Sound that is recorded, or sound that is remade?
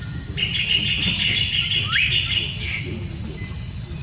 recorded